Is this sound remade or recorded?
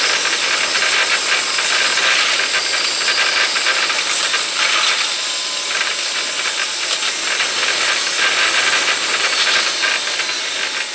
recorded